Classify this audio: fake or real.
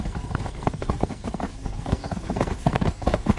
fake